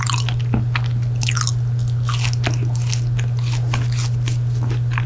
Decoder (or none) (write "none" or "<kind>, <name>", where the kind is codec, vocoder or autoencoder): none